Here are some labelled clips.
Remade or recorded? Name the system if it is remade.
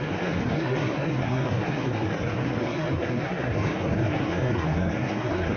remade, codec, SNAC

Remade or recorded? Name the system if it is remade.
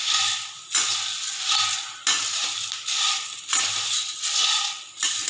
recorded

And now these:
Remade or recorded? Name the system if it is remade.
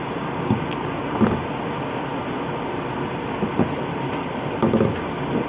recorded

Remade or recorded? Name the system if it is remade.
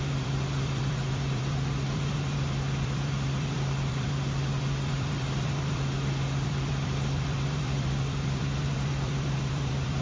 remade, vocoder, BigVGAN v2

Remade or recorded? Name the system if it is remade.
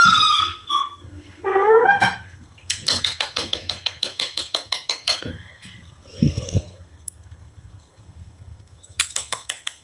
remade, codec, SNAC